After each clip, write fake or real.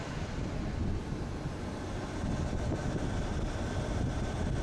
real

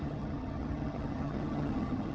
fake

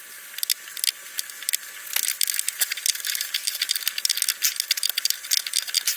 real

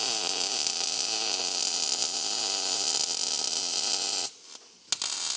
real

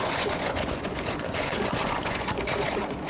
fake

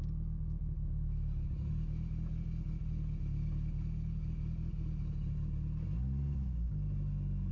real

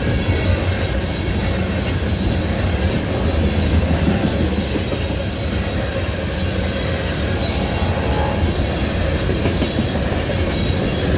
real